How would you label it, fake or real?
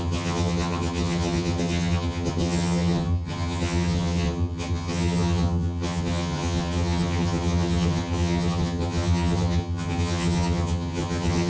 fake